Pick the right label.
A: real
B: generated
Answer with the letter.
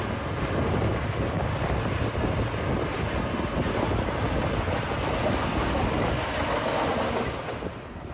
A